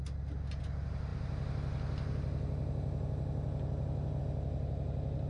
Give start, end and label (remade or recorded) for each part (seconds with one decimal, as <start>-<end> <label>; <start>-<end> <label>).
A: 0.0-5.3 recorded